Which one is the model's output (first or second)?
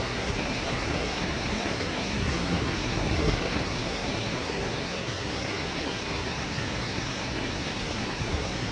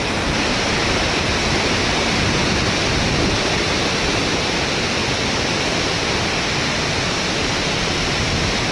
first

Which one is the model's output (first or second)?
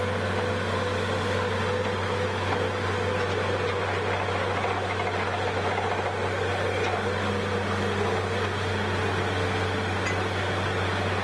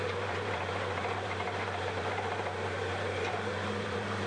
second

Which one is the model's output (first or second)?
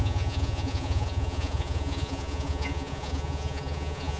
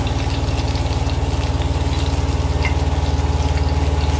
first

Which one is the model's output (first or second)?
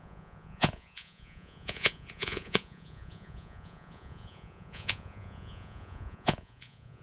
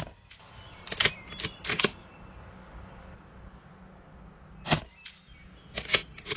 first